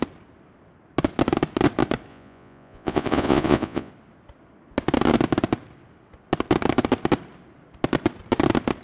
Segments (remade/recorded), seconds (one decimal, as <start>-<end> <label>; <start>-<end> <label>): 0.0-2.1 recorded; 2.1-3.9 remade; 3.9-8.8 recorded